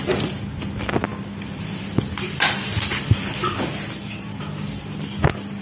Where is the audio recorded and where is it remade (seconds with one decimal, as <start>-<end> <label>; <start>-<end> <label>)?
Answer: 0.0-5.6 recorded